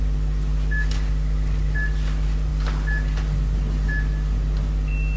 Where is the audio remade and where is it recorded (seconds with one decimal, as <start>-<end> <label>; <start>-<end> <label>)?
0.0-5.2 recorded